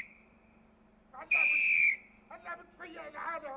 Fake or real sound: fake